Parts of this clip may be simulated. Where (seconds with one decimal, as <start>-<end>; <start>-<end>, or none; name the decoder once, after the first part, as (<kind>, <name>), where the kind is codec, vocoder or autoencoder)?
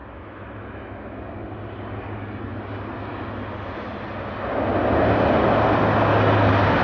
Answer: 0.0-1.3 (autoencoder, DAC-VAE)